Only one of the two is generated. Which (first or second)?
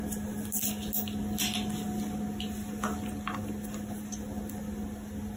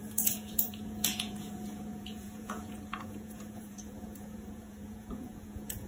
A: second